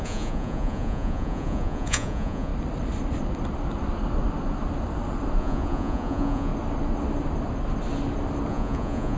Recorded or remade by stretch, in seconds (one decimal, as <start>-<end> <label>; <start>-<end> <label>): 0.0-2.5 remade; 2.5-5.4 recorded; 5.4-6.5 remade; 6.5-8.5 recorded; 8.5-9.2 remade